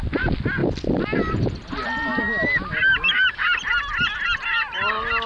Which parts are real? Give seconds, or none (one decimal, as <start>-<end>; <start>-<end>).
0.0-5.3